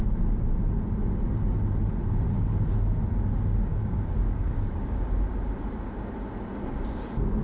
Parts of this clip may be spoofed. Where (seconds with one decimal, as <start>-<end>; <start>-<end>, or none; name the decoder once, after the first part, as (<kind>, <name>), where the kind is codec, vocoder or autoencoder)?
3.7-5.0 (codec, DAC)